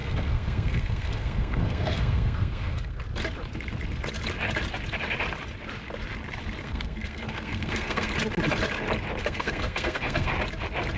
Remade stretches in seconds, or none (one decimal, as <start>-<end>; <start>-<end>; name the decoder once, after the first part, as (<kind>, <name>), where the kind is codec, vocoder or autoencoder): 0.0-3.0 (codec, SNAC); 6.6-8.1; 9.2-10.3